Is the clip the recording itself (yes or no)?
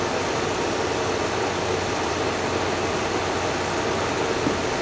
yes